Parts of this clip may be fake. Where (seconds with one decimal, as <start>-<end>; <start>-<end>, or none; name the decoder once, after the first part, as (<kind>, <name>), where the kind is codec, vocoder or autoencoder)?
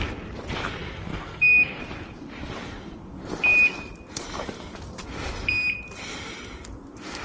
1.1-1.8 (codec, SNAC)